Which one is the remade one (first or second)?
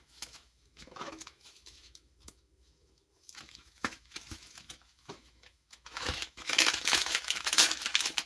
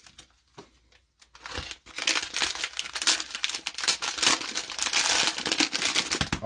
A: first